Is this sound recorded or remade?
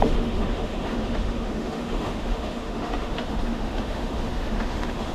remade